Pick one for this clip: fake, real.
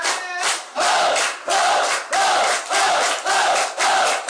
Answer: real